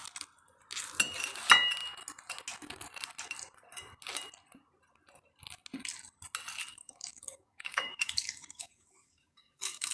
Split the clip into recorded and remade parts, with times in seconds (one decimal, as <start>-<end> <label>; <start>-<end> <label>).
0.0-6.6 recorded; 6.6-9.9 remade